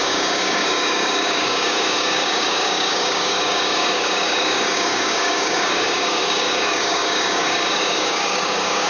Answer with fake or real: fake